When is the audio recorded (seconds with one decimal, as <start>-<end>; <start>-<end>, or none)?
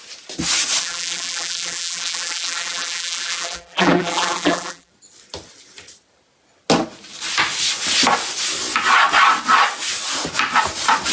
0.0-0.8; 4.9-11.1